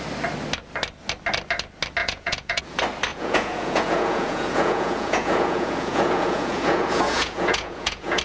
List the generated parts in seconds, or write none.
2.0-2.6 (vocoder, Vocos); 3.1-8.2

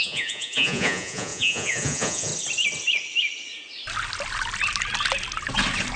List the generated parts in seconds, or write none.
0.0-2.3 (vocoder, Vocos)

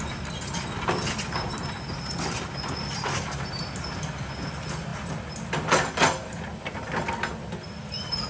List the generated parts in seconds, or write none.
none

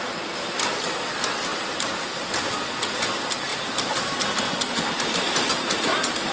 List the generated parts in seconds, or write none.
none

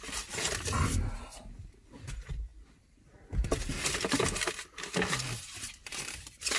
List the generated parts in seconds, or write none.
none

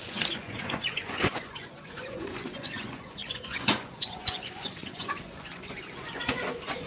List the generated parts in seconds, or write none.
0.0-6.9 (vocoder, Vocos)